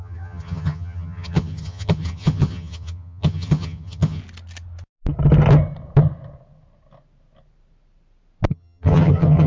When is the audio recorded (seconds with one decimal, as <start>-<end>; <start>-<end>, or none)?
4.2-8.5